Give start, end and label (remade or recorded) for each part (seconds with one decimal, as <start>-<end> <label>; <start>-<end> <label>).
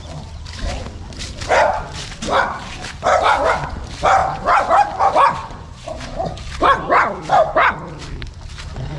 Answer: 0.0-5.4 recorded; 5.4-6.1 remade; 6.1-9.0 recorded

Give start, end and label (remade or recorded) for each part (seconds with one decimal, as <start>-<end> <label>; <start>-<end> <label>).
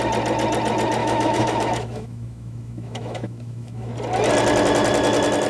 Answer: 0.0-1.0 recorded; 1.0-3.9 remade; 3.9-5.5 recorded